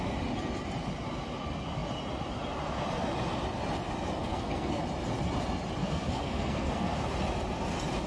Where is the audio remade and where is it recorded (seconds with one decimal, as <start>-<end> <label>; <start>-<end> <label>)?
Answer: 0.0-4.2 recorded; 4.2-4.8 remade; 4.8-5.8 recorded; 5.8-7.0 remade; 7.0-8.1 recorded